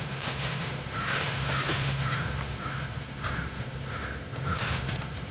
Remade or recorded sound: remade